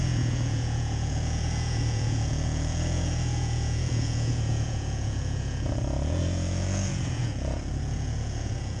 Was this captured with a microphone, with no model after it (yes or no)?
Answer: no